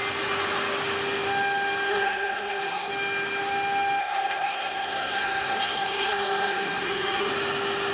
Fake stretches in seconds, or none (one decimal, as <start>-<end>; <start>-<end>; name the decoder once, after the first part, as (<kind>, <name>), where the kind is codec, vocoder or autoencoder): 1.9-2.9 (codec, SNAC); 4.0-7.3